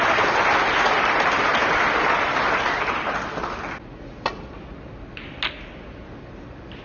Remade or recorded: recorded